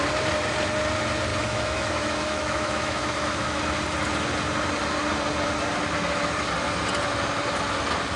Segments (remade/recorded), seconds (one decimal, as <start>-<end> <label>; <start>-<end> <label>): 0.0-1.3 recorded; 1.3-3.6 remade; 3.6-8.2 recorded